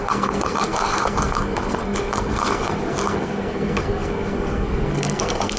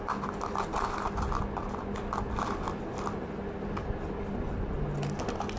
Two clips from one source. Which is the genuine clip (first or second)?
second